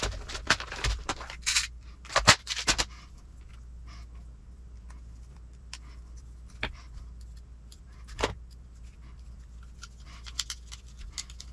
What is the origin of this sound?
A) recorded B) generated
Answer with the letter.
A